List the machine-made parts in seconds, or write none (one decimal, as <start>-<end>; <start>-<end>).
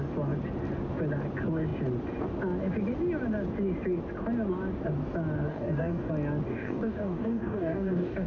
5.5-6.1; 6.5-8.3